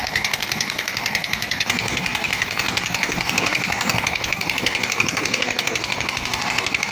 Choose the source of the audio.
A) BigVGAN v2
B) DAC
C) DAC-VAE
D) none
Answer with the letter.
B